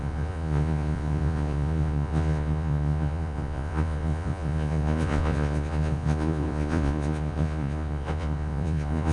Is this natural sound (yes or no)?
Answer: no